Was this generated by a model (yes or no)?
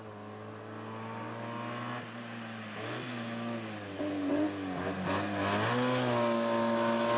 no